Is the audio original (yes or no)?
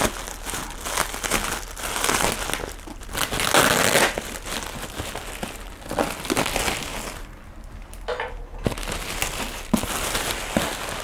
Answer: yes